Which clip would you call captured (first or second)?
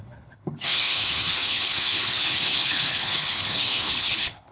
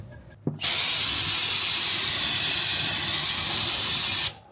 second